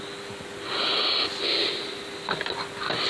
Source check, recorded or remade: recorded